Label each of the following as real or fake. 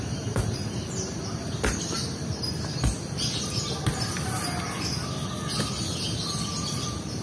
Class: real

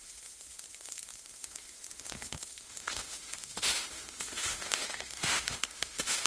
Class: fake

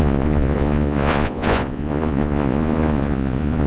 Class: fake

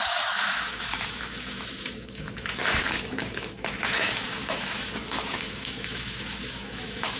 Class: fake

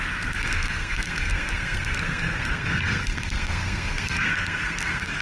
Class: fake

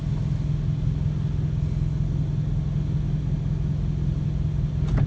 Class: real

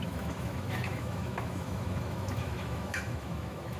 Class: fake